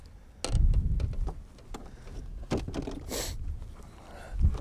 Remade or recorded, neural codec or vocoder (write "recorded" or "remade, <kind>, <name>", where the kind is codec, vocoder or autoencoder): recorded